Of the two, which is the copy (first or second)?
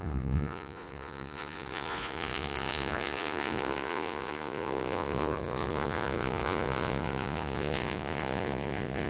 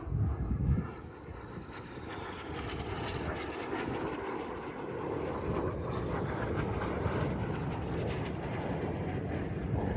first